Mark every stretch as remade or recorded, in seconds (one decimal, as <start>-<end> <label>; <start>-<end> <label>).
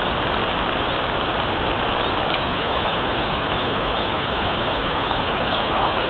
0.0-2.3 recorded; 2.3-6.1 remade